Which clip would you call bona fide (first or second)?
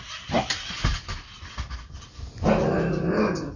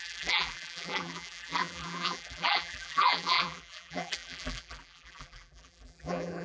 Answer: first